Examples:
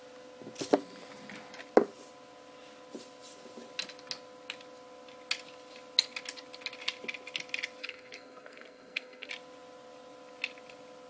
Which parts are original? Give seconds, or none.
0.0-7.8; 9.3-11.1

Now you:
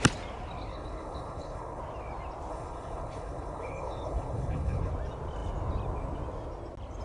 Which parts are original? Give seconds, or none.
0.0-0.7; 1.8-2.5; 4.9-7.0

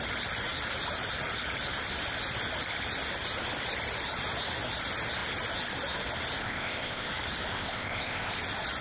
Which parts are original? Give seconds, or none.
0.0-6.4; 7.1-7.5; 8.3-8.8

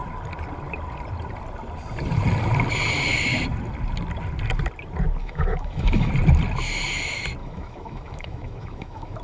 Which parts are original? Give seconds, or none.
0.0-5.2; 6.1-7.4

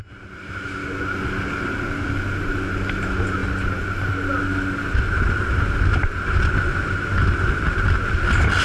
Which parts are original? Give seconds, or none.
0.0-8.6

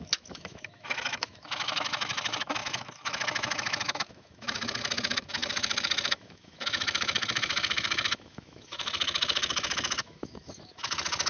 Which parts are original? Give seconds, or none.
none